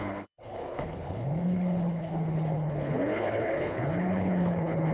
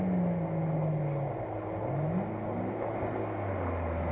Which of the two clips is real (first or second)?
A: second